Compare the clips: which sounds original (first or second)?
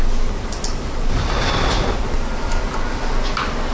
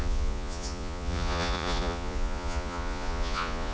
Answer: first